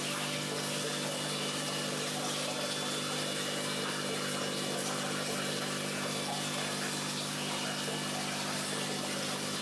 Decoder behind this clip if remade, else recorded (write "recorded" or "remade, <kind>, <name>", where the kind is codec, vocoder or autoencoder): recorded